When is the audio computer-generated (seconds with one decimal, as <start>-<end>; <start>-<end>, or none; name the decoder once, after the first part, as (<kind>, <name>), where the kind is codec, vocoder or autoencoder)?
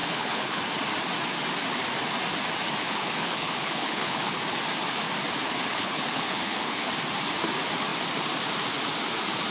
0.0-0.6 (codec, HILCodec); 2.8-4.4; 5.7-6.9